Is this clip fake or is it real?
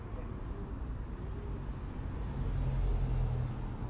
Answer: real